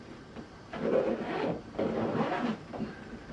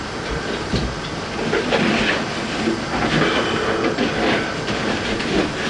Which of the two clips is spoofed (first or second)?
first